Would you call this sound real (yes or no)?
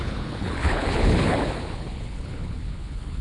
no